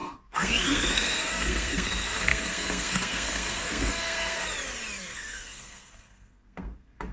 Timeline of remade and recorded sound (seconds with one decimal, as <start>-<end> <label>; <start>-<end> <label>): 0.0-4.4 remade; 4.4-5.0 recorded; 5.0-7.1 remade